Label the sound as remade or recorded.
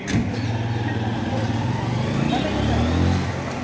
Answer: recorded